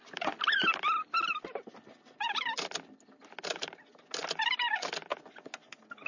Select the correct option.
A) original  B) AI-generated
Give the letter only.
A